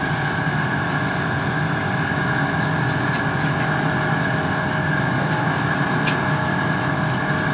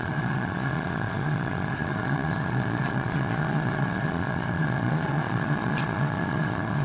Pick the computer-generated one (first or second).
second